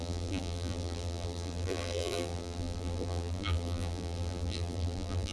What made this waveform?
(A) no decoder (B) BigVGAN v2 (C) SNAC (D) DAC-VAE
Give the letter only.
B